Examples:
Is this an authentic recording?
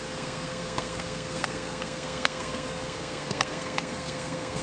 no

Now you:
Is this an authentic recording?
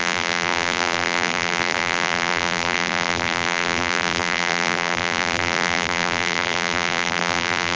no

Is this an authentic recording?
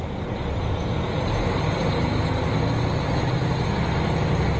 yes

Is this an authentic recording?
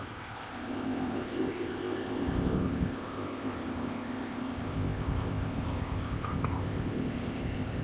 no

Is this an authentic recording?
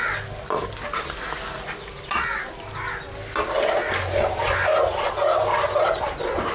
yes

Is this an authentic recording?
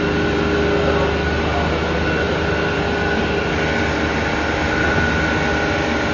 yes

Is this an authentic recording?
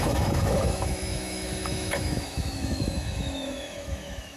no